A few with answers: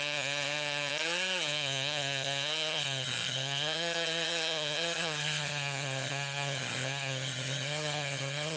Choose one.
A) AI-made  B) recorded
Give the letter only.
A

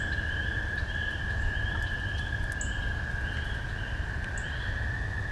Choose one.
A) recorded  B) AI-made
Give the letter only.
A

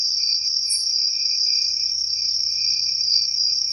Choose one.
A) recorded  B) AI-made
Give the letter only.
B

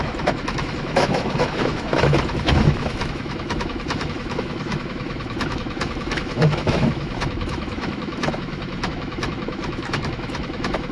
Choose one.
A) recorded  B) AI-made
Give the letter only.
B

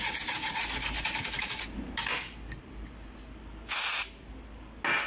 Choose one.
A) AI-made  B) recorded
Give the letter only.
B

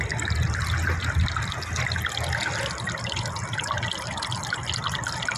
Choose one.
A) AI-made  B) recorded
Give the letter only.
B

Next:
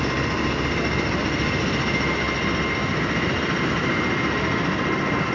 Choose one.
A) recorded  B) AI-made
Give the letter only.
A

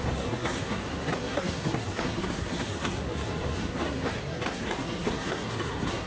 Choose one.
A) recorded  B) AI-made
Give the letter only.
B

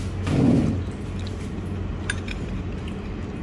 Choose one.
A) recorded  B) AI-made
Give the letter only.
A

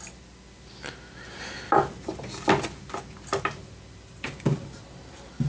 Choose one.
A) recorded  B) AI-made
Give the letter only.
A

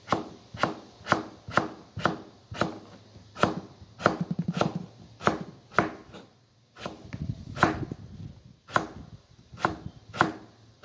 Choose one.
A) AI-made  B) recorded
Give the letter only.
B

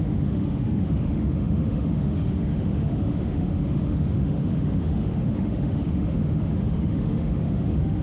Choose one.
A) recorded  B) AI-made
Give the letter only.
B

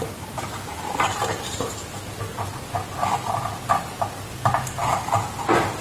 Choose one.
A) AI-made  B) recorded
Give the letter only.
B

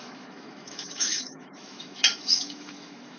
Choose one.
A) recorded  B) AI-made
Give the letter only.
B